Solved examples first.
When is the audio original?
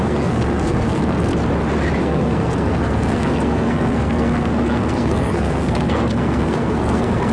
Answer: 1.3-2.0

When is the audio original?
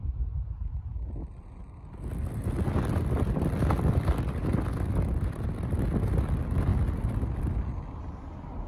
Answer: 0.0-8.7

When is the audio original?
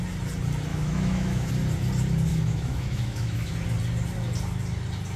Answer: 0.0-0.7; 1.5-2.3; 3.5-5.2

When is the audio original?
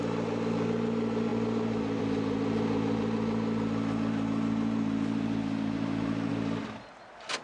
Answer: 0.0-7.4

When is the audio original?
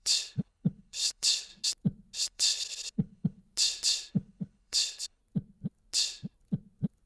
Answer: 1.5-2.2; 3.4-4.1; 5.2-7.1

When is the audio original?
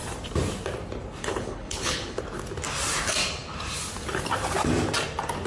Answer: 0.0-1.2; 2.2-5.5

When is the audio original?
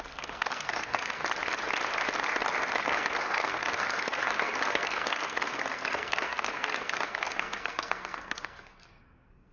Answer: 1.2-2.8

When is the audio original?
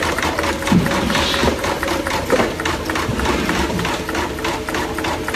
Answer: 0.0-1.4; 2.1-5.4